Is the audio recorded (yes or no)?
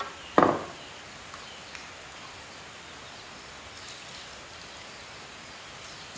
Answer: yes